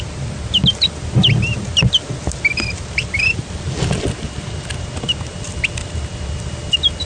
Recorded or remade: recorded